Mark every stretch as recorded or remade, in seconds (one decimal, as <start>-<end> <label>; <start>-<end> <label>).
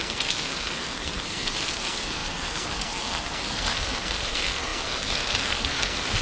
0.0-6.2 remade